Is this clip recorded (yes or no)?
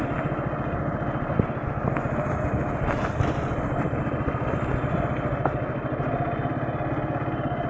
yes